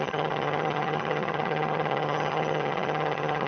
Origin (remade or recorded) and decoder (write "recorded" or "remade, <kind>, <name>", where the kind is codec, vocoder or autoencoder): remade, vocoder, HiFi-GAN